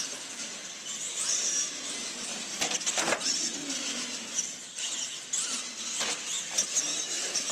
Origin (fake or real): real